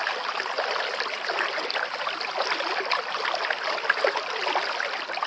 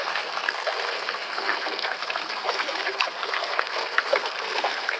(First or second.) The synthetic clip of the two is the second